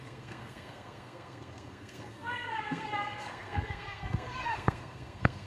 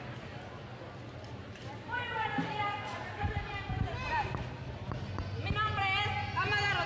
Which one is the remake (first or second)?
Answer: first